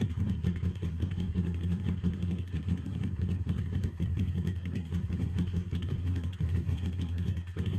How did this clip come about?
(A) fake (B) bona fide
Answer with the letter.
A